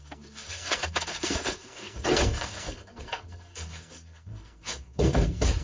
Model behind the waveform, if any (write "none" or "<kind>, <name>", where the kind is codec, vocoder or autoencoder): codec, SNAC